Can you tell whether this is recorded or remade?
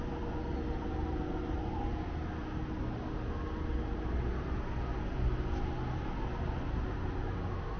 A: recorded